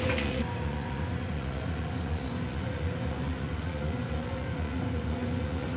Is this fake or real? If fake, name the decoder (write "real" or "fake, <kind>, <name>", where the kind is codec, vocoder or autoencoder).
fake, vocoder, Vocos